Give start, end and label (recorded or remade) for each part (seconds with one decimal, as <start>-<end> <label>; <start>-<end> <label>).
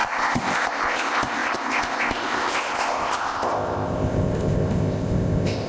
0.0-5.7 remade